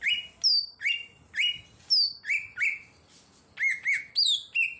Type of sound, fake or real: real